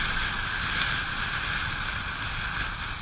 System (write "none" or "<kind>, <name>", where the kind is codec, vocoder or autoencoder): none